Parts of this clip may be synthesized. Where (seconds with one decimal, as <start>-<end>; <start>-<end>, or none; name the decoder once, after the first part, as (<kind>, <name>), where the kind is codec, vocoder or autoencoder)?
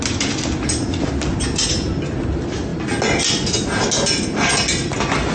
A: none